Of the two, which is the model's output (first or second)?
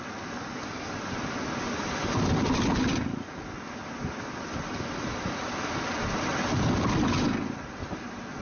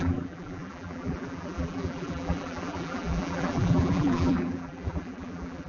second